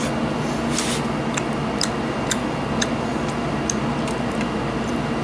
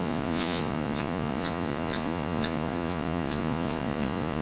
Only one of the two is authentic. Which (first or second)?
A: first